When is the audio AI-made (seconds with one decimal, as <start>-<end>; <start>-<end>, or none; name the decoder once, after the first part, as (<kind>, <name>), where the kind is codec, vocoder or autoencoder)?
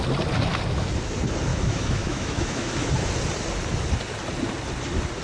1.5-2.9 (autoencoder, DAC-VAE)